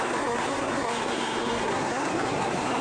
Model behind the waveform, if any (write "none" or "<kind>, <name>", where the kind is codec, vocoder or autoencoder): codec, SNAC